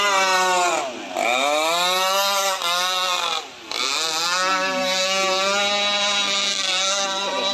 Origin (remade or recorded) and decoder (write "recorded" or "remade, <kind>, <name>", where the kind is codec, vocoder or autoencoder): recorded